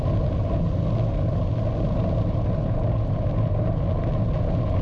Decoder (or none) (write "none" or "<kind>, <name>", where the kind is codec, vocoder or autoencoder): none